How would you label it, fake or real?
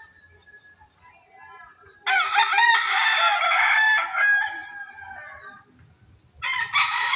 real